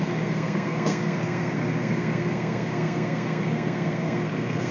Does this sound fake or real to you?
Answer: fake